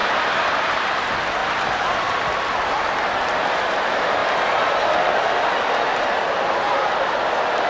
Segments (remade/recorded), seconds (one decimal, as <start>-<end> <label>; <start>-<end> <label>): 0.0-1.4 recorded; 1.4-3.3 remade; 3.3-7.7 recorded